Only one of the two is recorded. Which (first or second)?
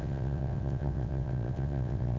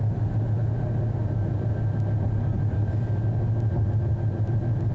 second